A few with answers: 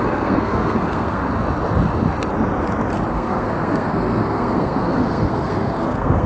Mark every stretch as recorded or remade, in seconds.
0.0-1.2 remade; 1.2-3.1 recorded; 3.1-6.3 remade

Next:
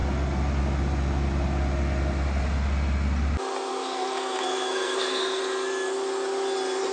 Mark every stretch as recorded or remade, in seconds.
0.0-3.7 recorded; 3.7-5.4 remade; 5.4-6.9 recorded

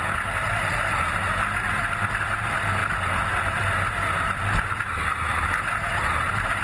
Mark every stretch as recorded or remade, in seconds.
0.0-6.6 recorded

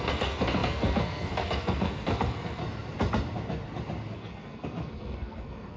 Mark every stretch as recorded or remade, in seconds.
0.0-2.6 remade; 2.6-4.1 recorded; 4.1-5.8 remade

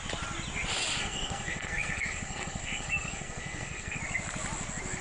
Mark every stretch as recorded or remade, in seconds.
0.0-1.0 recorded; 1.0-4.0 remade; 4.0-5.0 recorded

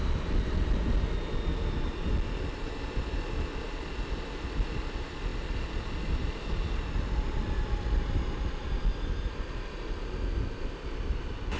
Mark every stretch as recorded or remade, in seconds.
0.0-11.6 recorded

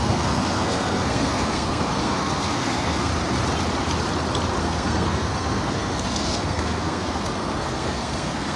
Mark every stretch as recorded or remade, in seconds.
0.0-3.1 remade; 3.1-4.6 recorded; 4.6-8.6 remade